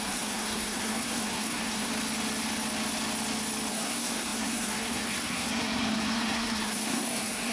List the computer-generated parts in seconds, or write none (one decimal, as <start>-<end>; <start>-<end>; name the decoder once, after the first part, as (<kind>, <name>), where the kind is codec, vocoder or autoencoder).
0.0-1.9 (codec, SNAC); 3.7-7.5